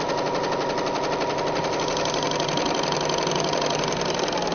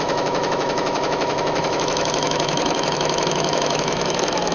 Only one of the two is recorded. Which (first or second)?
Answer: first